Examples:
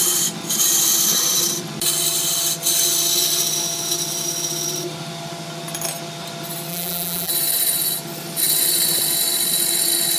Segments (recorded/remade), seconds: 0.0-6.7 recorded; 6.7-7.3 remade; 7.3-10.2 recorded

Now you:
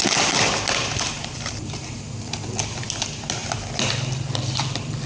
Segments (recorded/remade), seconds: 0.0-0.9 recorded; 0.9-2.4 remade; 2.4-5.1 recorded

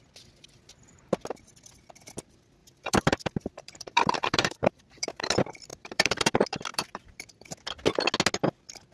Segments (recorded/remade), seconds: 0.0-2.6 recorded; 2.6-5.3 remade; 5.3-5.7 recorded; 5.7-6.3 remade; 6.3-6.7 recorded; 6.7-7.5 remade; 7.5-8.9 recorded

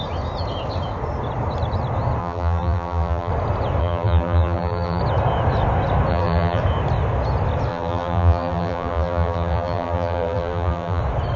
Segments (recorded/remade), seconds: 0.0-2.2 recorded; 2.2-3.3 remade; 3.3-3.8 recorded; 3.8-5.0 remade; 5.0-6.1 recorded; 6.1-6.6 remade; 6.6-7.7 recorded; 7.7-11.0 remade; 11.0-11.4 recorded